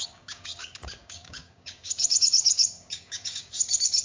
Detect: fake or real fake